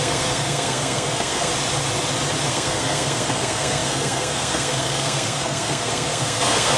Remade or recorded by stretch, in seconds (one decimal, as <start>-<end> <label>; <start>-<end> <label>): 0.0-1.5 remade; 1.5-2.5 recorded; 2.5-6.8 remade